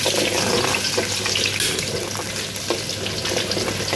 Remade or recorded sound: recorded